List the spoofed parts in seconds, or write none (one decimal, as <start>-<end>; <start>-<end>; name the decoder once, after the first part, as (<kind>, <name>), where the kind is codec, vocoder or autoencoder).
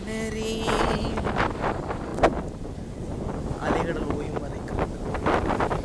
none